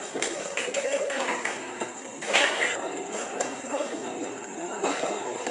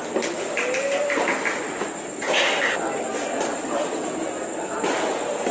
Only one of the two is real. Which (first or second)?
second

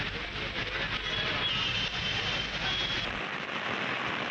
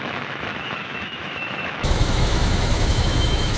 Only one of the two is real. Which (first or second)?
first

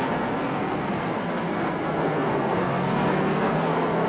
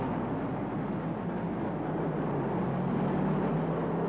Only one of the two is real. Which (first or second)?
second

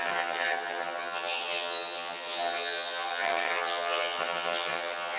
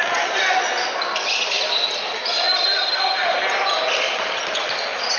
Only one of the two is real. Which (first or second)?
second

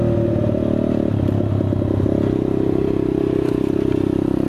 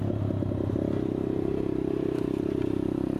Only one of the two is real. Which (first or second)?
first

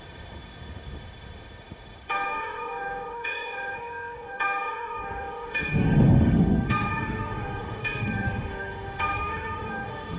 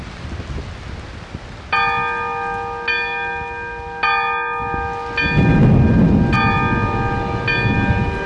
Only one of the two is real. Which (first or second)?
second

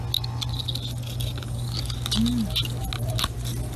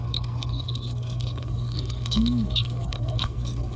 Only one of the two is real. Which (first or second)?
first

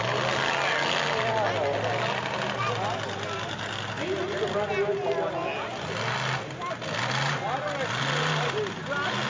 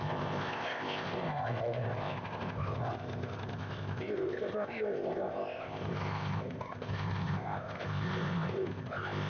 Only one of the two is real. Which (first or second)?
first